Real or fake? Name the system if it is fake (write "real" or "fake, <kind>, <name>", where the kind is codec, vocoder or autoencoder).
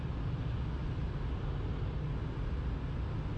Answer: real